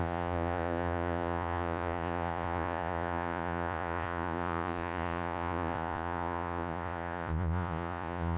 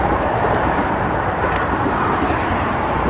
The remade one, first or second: first